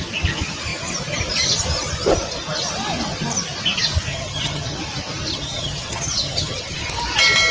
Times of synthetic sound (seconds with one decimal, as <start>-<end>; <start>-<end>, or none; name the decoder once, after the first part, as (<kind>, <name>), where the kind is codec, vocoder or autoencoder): 4.1-4.8 (vocoder, HiFi-GAN); 5.3-6.9